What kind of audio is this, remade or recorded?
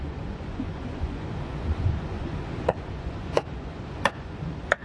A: remade